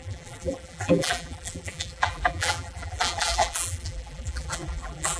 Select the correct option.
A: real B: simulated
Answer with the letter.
B